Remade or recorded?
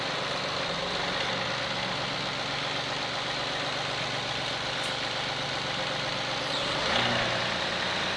recorded